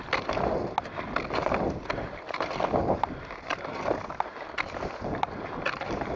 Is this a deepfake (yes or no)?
no